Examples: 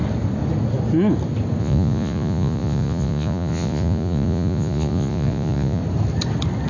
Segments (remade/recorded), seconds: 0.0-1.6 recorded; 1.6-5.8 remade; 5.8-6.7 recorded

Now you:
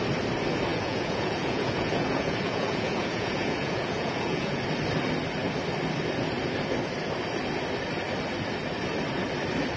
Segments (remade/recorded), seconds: 0.0-0.7 recorded; 0.7-4.6 remade; 4.6-9.8 recorded

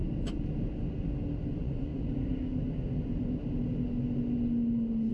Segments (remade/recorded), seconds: 0.0-1.5 recorded; 1.5-1.9 remade; 1.9-5.1 recorded

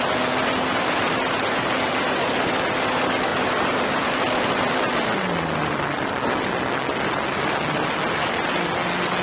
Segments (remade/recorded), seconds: 0.0-9.2 recorded